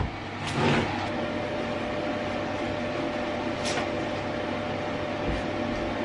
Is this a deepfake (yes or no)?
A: no